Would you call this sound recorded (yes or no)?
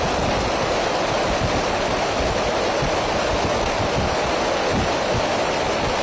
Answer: yes